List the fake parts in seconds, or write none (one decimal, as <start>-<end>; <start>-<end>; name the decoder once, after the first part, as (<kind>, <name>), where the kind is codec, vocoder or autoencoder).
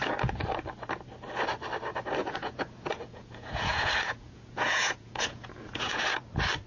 2.2-6.2 (vocoder, Vocos)